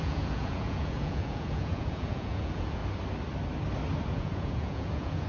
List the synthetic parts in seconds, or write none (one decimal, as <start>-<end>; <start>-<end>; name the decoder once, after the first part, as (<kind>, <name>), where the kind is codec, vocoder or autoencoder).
0.0-2.8 (vocoder, Vocos); 4.1-5.3